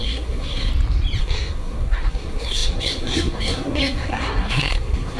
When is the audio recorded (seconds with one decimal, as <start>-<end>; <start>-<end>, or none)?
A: 0.7-1.2